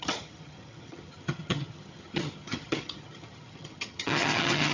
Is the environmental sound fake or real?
fake